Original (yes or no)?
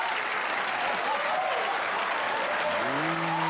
yes